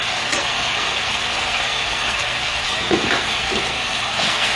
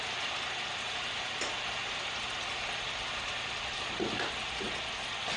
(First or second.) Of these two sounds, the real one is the second